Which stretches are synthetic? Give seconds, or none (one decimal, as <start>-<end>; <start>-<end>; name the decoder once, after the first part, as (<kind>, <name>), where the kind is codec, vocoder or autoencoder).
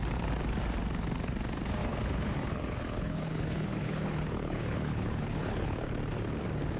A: 1.8-5.9 (codec, HILCodec)